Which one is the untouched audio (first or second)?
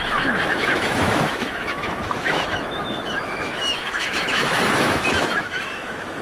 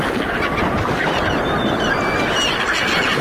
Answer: second